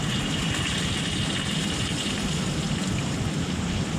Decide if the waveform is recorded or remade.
recorded